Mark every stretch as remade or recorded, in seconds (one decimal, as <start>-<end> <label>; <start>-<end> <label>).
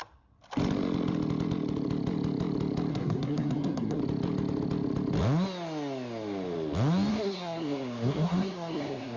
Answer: 0.0-2.9 recorded; 2.9-4.0 remade; 4.0-7.1 recorded; 7.1-9.2 remade